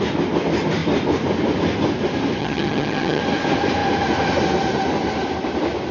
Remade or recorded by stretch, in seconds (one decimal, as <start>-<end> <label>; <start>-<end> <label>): 0.0-2.4 recorded; 2.4-3.2 remade; 3.2-5.9 recorded